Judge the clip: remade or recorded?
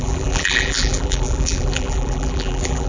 remade